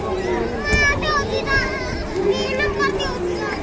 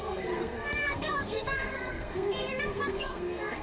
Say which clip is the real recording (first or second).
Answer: first